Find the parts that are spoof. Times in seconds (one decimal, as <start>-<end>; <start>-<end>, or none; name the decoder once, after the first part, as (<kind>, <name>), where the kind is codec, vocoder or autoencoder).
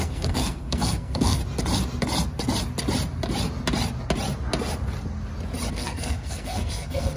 0.0-1.4 (codec, SNAC); 5.7-7.2